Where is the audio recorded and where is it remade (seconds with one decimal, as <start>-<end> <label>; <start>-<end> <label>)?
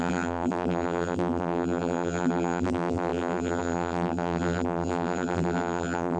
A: 0.0-6.2 remade